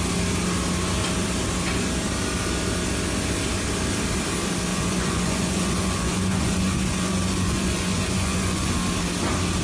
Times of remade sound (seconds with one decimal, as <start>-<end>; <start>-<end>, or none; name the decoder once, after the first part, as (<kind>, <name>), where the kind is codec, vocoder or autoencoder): 4.7-8.7 (vocoder, Vocos)